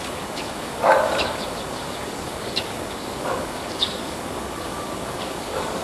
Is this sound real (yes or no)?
no